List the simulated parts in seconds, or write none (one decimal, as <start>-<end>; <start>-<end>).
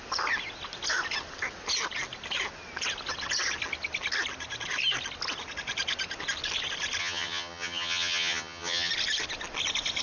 7.0-8.9